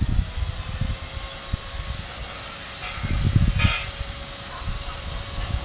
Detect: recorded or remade recorded